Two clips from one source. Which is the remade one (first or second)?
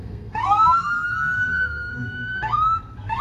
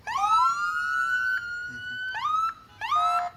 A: first